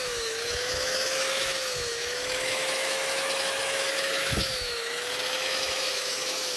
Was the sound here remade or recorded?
remade